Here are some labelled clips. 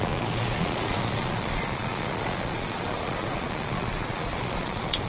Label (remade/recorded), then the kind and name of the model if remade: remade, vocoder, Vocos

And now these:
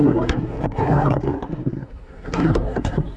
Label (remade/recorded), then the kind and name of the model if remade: remade, codec, SNAC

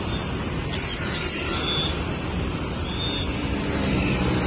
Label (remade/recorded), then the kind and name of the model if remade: recorded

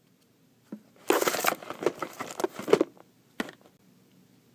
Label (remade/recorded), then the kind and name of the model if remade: recorded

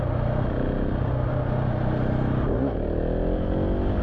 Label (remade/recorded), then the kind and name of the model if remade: recorded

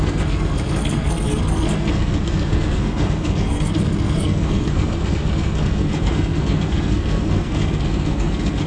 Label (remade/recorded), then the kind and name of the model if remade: remade, codec, SNAC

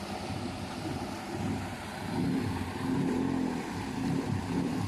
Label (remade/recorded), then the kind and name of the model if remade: recorded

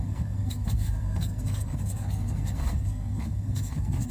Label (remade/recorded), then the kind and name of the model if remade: remade, codec, SNAC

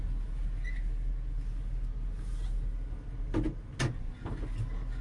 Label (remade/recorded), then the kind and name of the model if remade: recorded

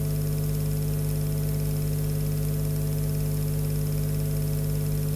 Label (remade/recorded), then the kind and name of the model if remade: recorded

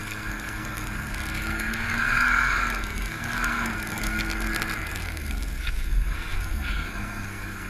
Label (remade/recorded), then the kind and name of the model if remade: remade, codec, SNAC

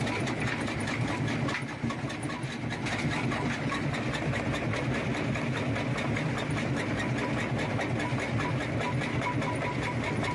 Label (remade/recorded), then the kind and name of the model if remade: recorded